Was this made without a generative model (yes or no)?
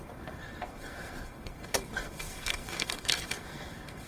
no